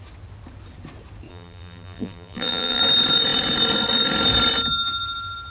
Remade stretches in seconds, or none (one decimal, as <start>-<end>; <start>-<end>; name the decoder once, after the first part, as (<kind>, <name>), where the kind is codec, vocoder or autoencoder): 1.3-2.8 (vocoder, BigVGAN v2)